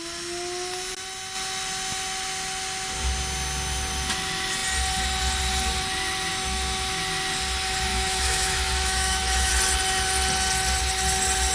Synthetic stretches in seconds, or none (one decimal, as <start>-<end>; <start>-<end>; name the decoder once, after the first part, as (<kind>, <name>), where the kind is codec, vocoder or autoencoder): 6.3-7.0 (autoencoder, DAC-VAE); 7.9-9.5